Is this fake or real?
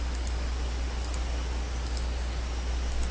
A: real